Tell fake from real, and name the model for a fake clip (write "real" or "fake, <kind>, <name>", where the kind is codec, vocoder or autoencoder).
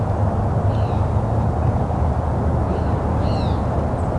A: real